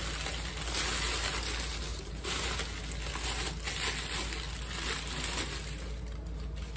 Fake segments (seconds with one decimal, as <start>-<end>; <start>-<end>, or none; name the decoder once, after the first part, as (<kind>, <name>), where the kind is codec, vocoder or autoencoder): 1.9-2.8 (vocoder, BigVGAN v2)